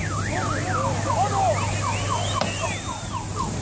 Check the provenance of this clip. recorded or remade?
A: recorded